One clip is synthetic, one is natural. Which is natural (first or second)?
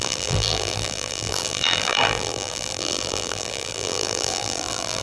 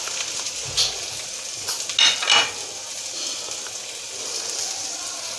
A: second